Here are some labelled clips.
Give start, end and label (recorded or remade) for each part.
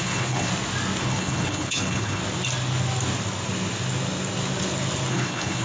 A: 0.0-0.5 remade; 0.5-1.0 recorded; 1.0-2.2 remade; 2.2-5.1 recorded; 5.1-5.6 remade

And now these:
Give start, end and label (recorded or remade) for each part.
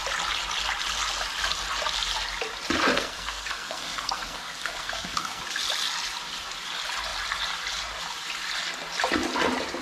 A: 0.0-2.9 recorded; 2.9-5.4 remade; 5.4-9.8 recorded